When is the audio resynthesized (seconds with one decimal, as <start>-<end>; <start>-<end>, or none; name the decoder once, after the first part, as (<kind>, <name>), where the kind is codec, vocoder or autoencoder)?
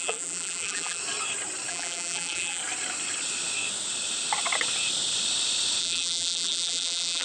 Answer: 0.0-1.0 (vocoder, BigVGAN v2); 1.7-2.6; 5.8-7.2